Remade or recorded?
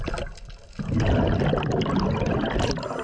recorded